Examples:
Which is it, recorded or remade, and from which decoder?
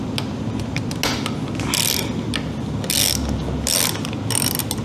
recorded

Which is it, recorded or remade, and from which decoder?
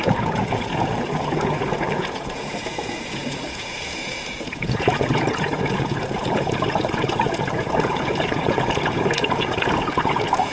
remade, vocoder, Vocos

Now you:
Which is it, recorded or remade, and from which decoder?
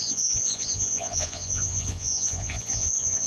remade, vocoder, Vocos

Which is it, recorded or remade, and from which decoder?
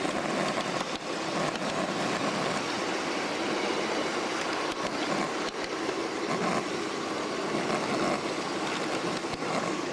recorded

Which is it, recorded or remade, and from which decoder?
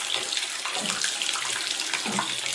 recorded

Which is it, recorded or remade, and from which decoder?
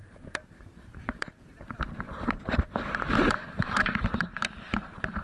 remade, vocoder, BigVGAN v2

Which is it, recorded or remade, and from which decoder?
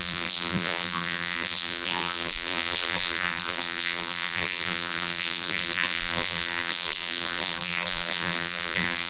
remade, vocoder, BigVGAN v2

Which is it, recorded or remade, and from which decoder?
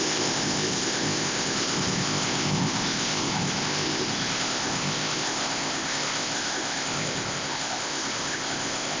remade, codec, ZipCodec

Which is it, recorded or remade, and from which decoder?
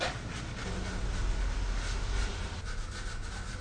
recorded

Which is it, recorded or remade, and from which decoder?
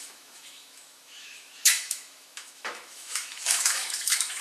remade, autoencoder, DAC-VAE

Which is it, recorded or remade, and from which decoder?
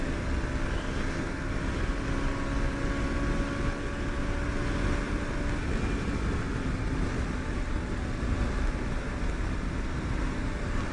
recorded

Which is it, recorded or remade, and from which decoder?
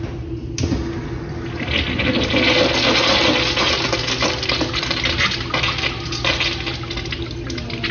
recorded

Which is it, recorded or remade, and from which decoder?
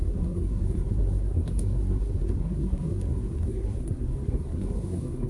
remade, codec, SNAC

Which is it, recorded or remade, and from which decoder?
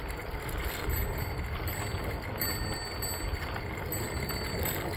recorded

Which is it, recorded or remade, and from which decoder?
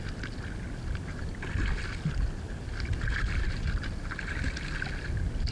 recorded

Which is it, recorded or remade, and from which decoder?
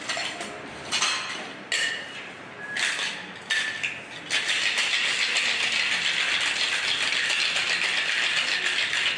recorded